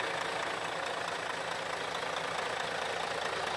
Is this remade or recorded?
recorded